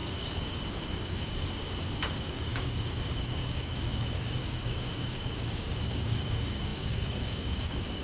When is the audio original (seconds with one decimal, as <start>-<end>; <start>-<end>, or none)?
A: none